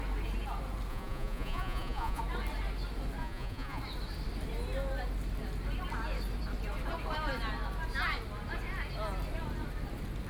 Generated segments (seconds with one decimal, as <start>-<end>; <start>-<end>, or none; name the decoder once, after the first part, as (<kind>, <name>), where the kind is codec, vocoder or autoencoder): 0.9-2.2 (vocoder, Vocos); 3.2-3.8